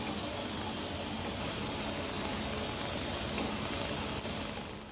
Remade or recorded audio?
recorded